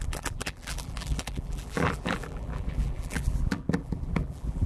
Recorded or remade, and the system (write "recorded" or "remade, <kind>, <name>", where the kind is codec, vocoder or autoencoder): remade, vocoder, BigVGAN v2